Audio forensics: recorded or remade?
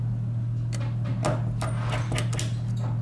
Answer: recorded